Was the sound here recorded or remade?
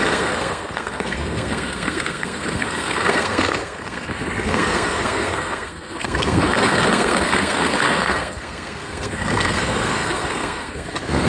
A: remade